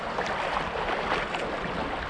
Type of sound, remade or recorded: recorded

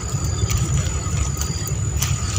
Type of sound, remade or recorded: recorded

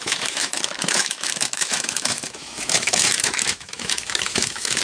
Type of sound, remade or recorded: remade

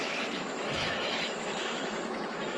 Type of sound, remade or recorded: remade